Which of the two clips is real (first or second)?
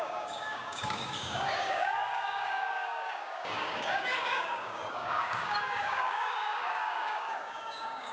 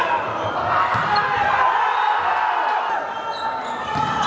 second